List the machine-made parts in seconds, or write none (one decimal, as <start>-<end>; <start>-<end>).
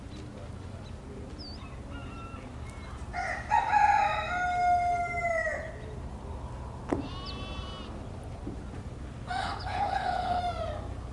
9.4-10.4